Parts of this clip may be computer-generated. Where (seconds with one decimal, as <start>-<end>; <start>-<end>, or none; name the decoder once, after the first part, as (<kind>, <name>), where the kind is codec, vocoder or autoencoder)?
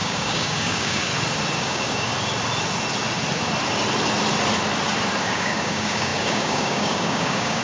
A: 0.0-1.1 (codec, DAC); 1.6-2.1; 5.2-7.6